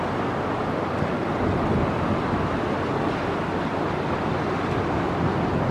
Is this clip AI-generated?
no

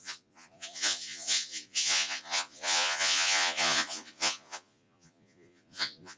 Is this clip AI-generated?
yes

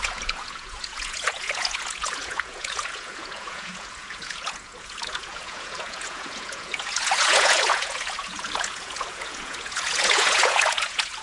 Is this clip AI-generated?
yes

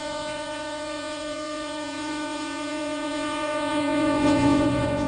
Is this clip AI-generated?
yes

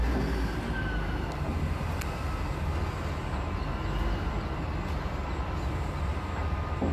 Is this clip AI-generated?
no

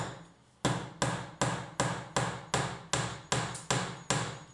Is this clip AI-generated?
no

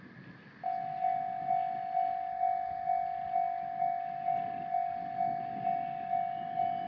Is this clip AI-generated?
no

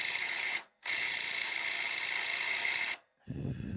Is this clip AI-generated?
yes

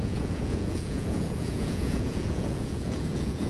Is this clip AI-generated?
yes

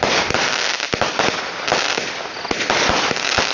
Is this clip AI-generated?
no